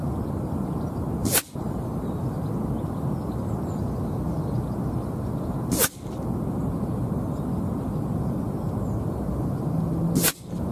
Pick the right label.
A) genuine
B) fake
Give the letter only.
A